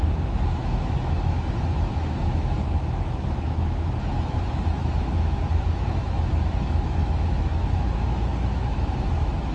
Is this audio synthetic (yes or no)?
yes